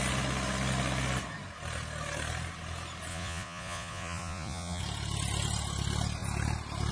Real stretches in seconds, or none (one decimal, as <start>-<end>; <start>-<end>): 0.0-3.1; 4.8-6.9